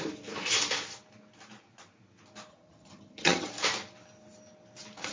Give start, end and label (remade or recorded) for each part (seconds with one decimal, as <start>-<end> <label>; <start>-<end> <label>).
0.0-2.5 recorded; 2.5-3.5 remade; 3.5-5.1 recorded